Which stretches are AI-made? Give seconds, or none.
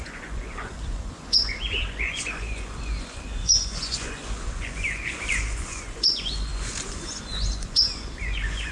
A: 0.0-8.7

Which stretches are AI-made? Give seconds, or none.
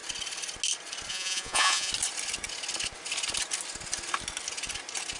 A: 1.1-1.9